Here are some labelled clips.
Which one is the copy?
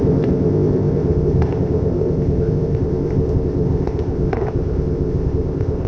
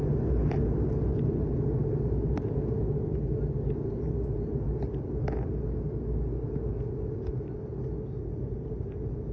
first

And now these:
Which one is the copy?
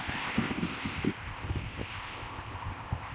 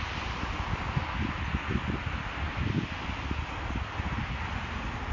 first